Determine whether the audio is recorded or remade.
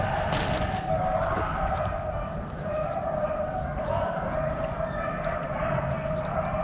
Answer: recorded